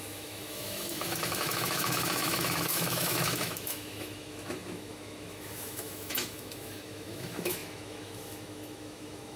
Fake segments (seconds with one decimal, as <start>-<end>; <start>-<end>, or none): 0.0-9.4